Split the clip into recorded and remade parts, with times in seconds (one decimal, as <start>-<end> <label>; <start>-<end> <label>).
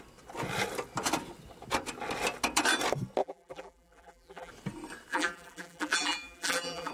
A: 0.0-3.2 recorded; 3.2-4.5 remade; 4.5-5.1 recorded; 5.1-6.9 remade